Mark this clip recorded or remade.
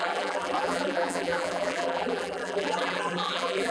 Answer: remade